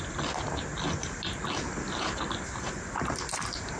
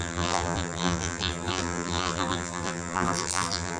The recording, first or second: first